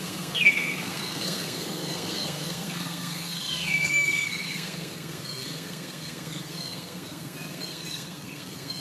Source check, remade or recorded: remade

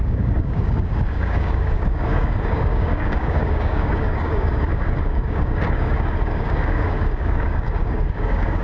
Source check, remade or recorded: remade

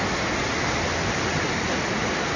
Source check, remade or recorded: recorded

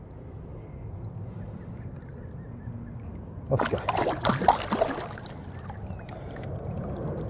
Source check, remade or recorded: recorded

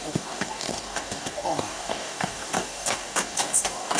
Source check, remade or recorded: remade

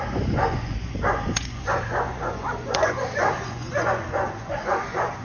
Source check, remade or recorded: remade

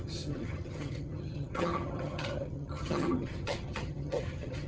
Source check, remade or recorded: remade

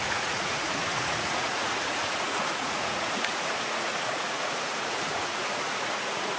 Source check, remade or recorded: remade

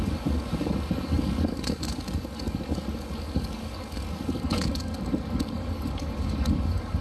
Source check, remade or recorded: remade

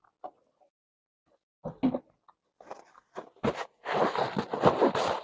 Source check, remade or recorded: recorded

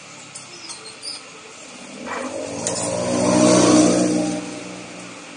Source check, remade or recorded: recorded